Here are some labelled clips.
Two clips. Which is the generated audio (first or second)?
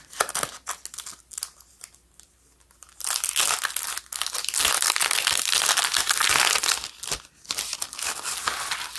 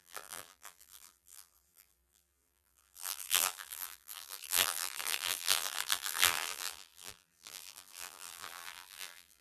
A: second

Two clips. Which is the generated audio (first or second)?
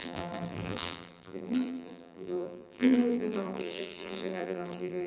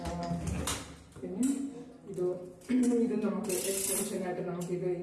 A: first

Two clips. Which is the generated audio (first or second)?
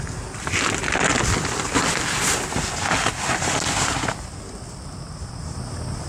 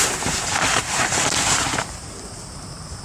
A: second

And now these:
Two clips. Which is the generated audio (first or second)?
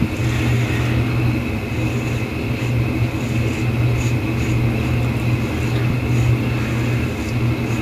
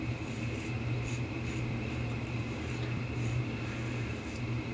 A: second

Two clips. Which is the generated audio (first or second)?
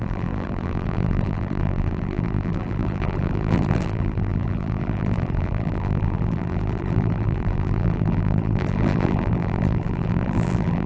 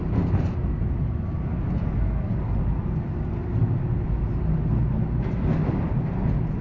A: first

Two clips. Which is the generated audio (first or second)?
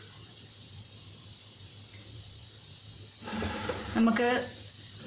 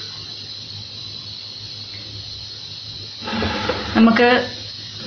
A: first